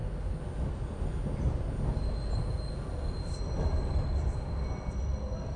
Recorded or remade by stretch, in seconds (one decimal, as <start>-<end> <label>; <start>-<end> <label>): 0.0-5.6 recorded